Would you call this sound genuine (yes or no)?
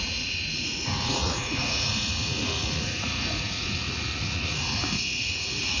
no